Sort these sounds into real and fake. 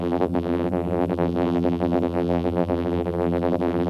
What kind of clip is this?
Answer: fake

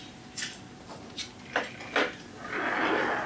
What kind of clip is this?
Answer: real